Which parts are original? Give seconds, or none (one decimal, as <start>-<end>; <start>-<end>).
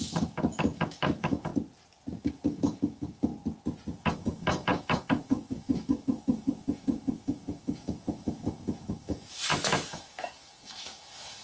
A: 1.5-2.2; 3.3-4.0